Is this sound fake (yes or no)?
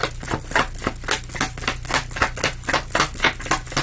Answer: no